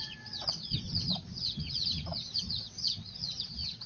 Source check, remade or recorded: remade